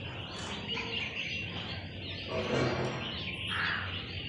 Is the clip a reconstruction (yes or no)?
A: no